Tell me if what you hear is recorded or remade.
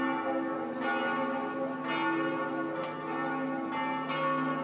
recorded